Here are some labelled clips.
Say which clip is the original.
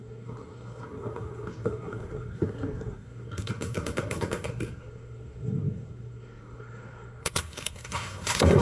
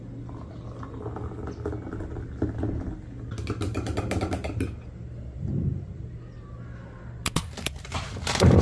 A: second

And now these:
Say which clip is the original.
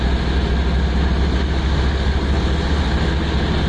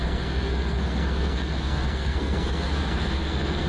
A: first